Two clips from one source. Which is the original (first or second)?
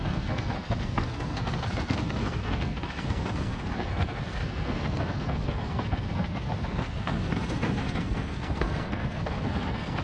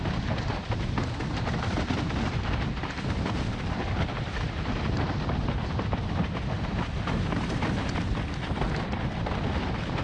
second